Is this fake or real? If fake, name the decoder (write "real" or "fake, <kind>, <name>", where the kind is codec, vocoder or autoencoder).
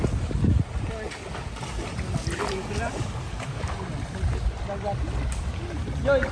real